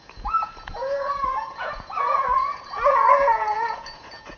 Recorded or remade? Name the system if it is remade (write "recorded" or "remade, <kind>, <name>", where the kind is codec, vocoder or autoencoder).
remade, vocoder, Vocos